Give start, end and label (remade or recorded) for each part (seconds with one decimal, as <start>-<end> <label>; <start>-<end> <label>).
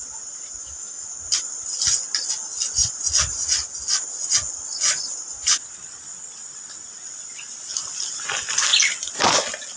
0.0-0.6 recorded; 0.6-1.1 remade; 1.1-9.8 recorded